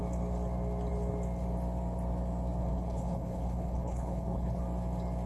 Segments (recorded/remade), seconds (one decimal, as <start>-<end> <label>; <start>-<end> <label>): 0.0-2.6 recorded; 2.6-4.6 remade; 4.6-5.3 recorded